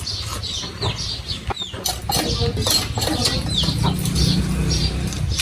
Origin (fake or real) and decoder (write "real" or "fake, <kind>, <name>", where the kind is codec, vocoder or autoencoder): real